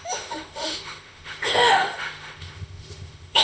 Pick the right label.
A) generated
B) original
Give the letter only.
A